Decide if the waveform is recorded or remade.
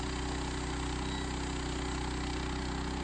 recorded